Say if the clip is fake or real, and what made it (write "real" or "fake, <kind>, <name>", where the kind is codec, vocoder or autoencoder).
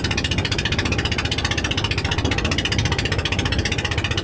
real